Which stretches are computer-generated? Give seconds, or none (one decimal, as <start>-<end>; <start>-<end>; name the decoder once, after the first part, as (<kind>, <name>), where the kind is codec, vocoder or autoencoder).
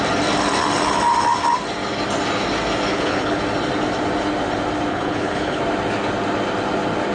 2.9-3.4 (codec, HILCodec); 4.9-5.6